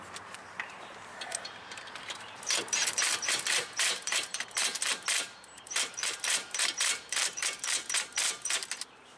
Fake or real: fake